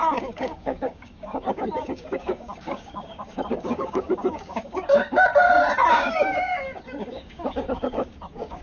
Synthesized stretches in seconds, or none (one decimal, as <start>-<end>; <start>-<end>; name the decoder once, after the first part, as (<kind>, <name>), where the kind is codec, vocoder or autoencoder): 0.0-5.3 (codec, DAC); 5.9-8.6